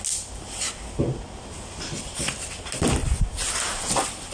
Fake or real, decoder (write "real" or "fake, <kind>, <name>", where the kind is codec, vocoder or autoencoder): real